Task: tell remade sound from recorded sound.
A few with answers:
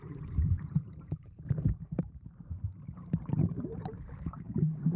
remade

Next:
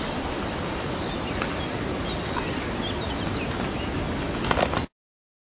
recorded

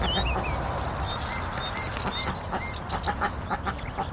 recorded